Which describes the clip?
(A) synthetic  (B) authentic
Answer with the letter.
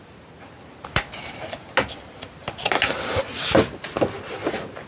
B